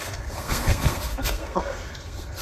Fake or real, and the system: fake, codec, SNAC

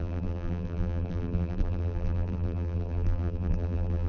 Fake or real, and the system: fake, vocoder, BigVGAN v2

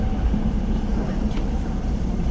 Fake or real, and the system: fake, vocoder, BigVGAN v2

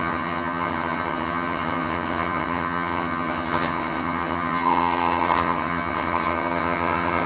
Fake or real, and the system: fake, vocoder, HiFi-GAN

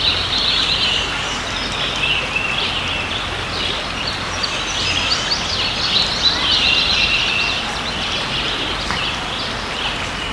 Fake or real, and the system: real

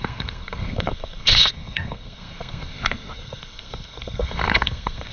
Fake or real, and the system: fake, codec, SNAC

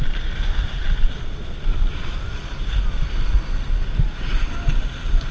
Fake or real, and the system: real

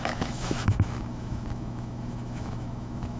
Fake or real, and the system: fake, autoencoder, DAC-VAE